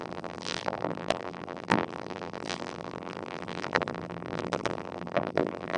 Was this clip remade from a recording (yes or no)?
yes